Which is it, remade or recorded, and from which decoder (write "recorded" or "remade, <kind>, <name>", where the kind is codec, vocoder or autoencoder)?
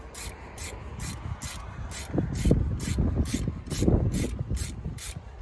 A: recorded